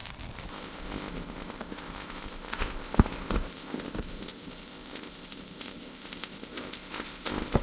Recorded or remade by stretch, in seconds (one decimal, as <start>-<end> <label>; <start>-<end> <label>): 0.0-0.5 recorded; 0.5-7.6 remade